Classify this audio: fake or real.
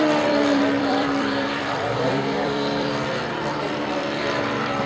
fake